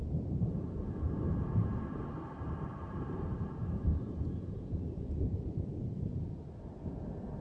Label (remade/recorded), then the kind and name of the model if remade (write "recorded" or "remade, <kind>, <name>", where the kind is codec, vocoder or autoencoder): remade, vocoder, BigVGAN v2